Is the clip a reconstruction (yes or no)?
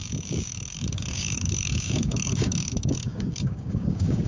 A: yes